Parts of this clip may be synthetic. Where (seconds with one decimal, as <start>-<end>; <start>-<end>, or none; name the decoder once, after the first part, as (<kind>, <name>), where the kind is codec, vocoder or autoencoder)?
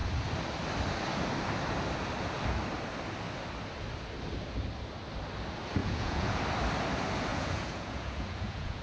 5.8-6.4 (vocoder, Vocos); 7.3-8.8